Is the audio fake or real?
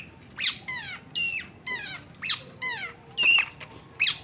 real